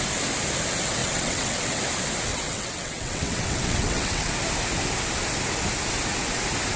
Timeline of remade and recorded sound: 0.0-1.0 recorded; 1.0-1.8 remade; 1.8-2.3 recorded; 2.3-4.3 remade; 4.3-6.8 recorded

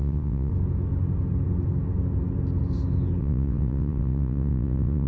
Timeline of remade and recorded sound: 0.0-0.5 remade; 0.5-3.2 recorded; 3.2-5.1 remade

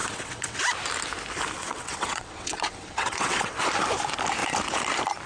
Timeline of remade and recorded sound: 0.0-0.6 remade; 0.6-1.6 recorded; 1.6-3.6 remade; 3.6-5.3 recorded

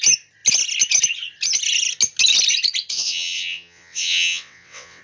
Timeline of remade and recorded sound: 0.0-2.9 recorded; 2.9-5.0 remade

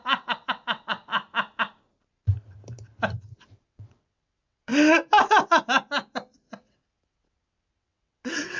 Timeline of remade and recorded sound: 0.0-1.1 remade; 1.1-3.5 recorded; 3.5-4.7 remade; 4.7-6.6 recorded; 6.6-8.6 remade